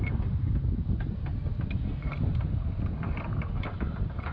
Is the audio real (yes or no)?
yes